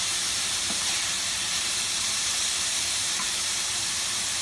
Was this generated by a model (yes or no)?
yes